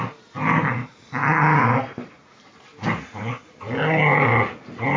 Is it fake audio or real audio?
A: real